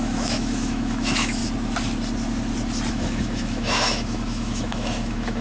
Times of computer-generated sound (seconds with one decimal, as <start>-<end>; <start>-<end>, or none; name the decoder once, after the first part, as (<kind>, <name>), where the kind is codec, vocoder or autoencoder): 0.0-1.4 (autoencoder, DAC-VAE); 2.9-5.4